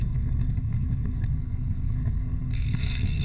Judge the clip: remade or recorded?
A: remade